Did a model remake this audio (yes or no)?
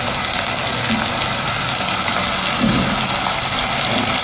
no